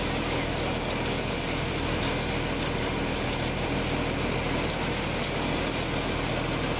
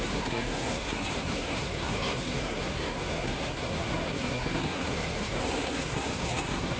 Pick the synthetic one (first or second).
second